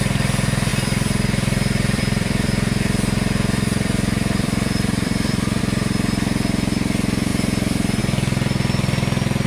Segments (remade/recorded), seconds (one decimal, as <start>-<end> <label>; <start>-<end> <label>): 0.0-0.7 recorded; 0.7-5.6 remade; 5.6-7.3 recorded; 7.3-8.0 remade; 8.0-9.5 recorded